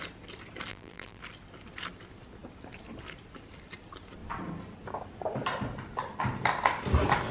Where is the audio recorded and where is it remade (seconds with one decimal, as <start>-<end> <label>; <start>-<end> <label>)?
0.0-0.7 recorded; 0.7-1.2 remade; 1.2-7.3 recorded